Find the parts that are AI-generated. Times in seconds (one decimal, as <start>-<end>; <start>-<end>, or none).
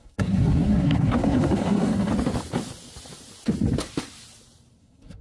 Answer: 0.0-2.1; 4.8-5.2